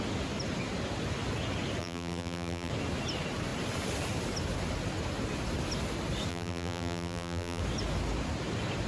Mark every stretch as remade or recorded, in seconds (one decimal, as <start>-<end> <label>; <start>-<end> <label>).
0.0-1.8 recorded; 1.8-2.7 remade; 2.7-6.3 recorded; 6.3-7.6 remade; 7.6-8.9 recorded